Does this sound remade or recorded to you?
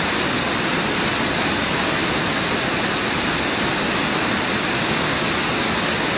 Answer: recorded